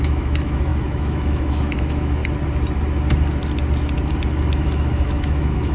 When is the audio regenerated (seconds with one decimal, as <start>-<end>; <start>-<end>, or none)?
0.0-2.2; 4.5-5.7